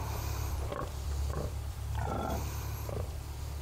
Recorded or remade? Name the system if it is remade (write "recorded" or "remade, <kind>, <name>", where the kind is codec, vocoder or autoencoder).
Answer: remade, vocoder, BigVGAN v2